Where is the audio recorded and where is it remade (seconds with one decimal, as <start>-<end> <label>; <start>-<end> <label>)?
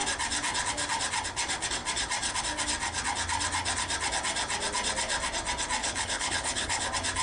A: 0.0-5.8 recorded; 5.8-6.8 remade; 6.8-7.2 recorded